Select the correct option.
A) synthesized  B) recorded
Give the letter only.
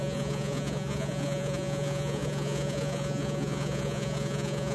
A